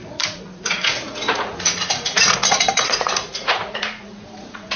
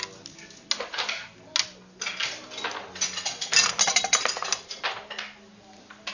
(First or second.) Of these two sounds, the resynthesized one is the first